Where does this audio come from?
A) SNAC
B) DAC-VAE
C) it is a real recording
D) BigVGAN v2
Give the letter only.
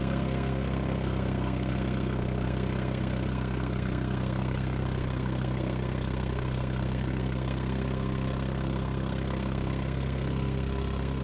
A